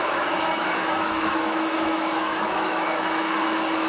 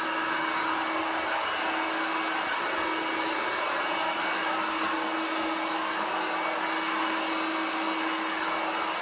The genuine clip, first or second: second